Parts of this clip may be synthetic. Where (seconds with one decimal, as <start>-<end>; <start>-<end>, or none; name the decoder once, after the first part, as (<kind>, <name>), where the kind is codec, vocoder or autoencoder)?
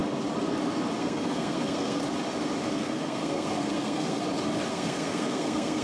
1.0-2.0 (codec, SNAC); 2.6-4.2; 4.7-5.8